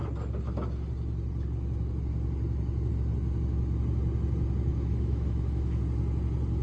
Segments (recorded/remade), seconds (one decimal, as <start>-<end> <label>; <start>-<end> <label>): 0.0-4.7 recorded; 4.7-5.8 remade; 5.8-6.6 recorded